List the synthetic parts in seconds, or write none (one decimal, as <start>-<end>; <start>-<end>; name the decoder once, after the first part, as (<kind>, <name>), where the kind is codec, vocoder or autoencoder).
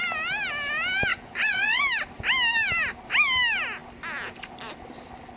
1.1-1.8 (vocoder, Vocos)